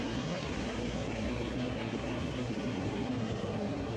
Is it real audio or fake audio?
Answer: fake